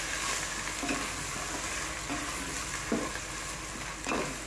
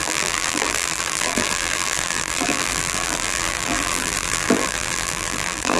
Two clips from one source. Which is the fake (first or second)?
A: second